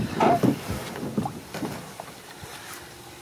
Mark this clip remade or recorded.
recorded